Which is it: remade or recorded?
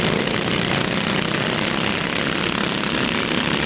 recorded